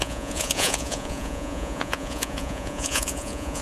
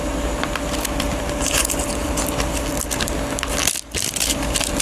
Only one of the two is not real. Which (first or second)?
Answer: first